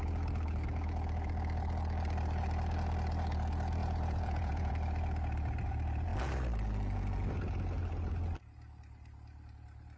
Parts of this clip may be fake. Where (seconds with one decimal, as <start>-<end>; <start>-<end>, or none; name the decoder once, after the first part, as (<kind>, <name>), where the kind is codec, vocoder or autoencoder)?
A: 3.8-4.7 (vocoder, Vocos)